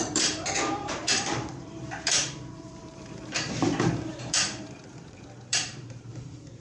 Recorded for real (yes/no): no